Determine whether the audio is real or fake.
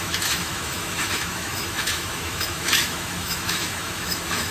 fake